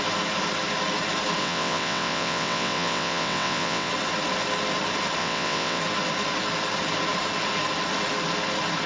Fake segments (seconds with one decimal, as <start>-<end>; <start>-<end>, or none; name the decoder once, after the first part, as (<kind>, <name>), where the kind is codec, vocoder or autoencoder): 1.4-3.9 (vocoder, WaveNeXt); 5.2-5.8